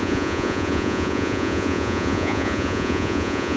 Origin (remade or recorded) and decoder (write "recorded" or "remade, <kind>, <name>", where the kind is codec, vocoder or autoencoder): remade, vocoder, Vocos